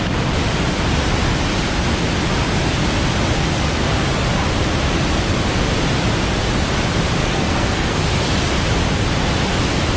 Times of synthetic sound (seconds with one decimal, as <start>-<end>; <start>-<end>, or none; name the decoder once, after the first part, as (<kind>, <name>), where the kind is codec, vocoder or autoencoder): 7.2-8.0 (codec, SNAC)